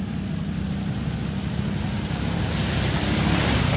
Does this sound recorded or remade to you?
recorded